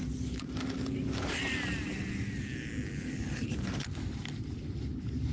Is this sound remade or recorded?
recorded